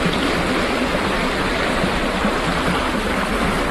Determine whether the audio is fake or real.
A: real